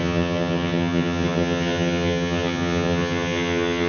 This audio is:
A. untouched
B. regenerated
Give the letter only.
B